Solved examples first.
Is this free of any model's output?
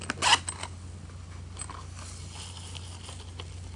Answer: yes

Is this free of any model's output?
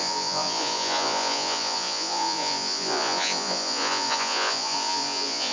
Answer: no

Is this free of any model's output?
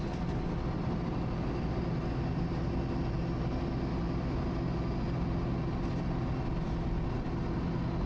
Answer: yes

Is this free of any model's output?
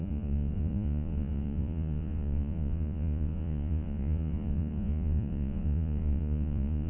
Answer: no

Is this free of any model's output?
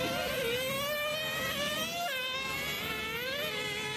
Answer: yes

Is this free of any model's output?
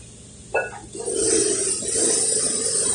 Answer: yes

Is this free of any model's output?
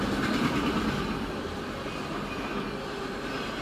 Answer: yes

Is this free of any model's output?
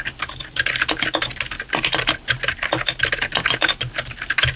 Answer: yes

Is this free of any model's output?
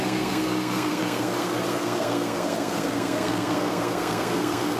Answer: no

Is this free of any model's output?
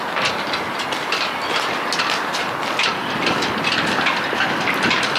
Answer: yes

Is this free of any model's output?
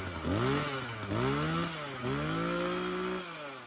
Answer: yes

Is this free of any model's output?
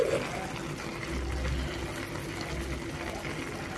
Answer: yes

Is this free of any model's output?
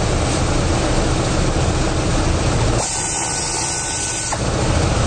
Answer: yes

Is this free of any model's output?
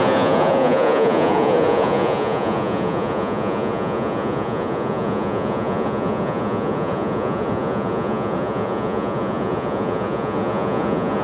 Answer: no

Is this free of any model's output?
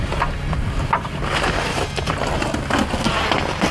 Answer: yes